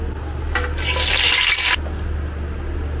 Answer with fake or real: real